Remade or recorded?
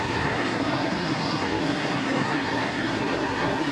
remade